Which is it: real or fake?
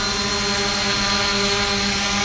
real